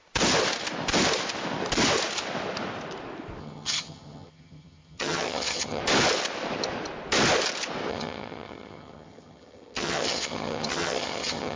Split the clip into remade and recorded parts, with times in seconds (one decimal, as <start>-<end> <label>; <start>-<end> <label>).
0.0-3.4 recorded; 3.4-5.8 remade; 5.8-7.9 recorded; 7.9-11.6 remade